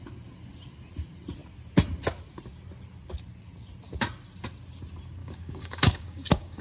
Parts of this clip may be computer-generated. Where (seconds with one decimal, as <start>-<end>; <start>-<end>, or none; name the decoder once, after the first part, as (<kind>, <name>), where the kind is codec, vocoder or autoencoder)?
5.2-6.6 (codec, DAC)